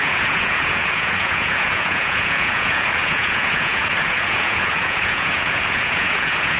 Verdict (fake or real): fake